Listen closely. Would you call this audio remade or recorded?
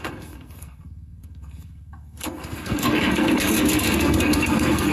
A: remade